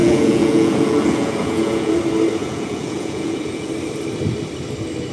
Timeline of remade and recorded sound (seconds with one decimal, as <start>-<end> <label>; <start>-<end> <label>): 0.0-2.0 remade; 2.0-2.4 recorded; 2.4-3.7 remade; 3.7-5.1 recorded